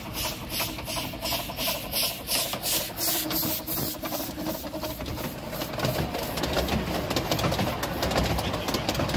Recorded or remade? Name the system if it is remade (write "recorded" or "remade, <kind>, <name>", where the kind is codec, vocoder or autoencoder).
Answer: recorded